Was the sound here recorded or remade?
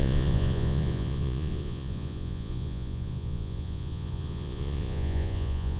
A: remade